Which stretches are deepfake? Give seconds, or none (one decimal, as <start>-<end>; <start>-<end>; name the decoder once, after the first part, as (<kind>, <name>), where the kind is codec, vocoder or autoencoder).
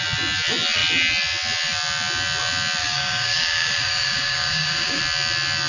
2.8-5.0 (codec, DAC)